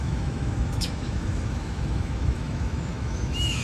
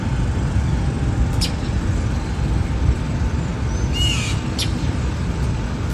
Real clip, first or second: second